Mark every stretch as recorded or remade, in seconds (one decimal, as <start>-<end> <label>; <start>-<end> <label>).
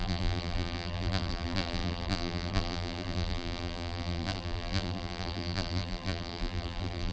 0.0-7.1 remade